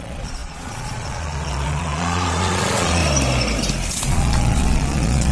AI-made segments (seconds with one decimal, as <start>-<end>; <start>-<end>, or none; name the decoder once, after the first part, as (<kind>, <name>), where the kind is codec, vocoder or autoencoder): 0.0-3.0 (vocoder, Vocos); 3.9-5.3